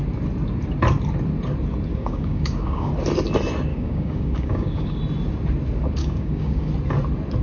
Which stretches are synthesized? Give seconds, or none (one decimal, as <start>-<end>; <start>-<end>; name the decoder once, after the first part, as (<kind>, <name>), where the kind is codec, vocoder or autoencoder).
1.9-2.9 (codec, DAC); 3.7-5.0; 6.0-6.7